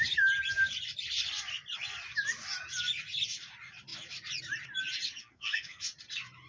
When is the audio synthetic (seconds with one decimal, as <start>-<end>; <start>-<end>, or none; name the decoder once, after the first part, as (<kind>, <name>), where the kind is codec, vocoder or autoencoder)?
5.2-5.8 (codec, SNAC)